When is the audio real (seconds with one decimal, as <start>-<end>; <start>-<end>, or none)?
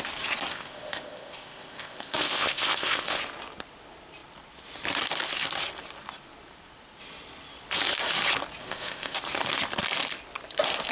0.0-0.5; 3.2-8.6; 9.2-10.9